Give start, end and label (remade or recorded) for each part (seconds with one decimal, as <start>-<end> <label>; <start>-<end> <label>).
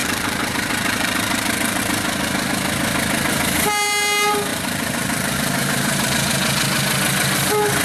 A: 0.0-1.8 remade; 1.8-4.5 recorded; 4.5-6.1 remade; 6.1-7.8 recorded